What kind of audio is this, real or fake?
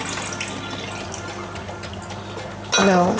real